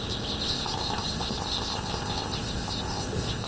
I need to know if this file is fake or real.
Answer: fake